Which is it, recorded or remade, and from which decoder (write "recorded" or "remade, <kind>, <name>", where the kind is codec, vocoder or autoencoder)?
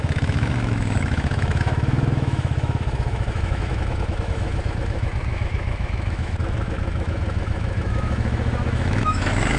remade, autoencoder, DAC-VAE